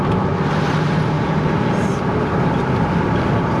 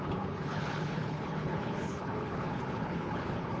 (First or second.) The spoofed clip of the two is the second